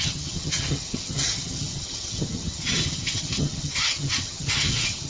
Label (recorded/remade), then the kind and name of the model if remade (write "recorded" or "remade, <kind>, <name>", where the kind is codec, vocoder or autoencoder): remade, vocoder, HiFi-GAN